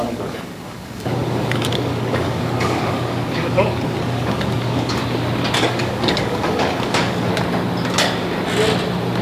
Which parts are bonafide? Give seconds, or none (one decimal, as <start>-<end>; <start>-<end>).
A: 5.0-5.6; 7.3-9.2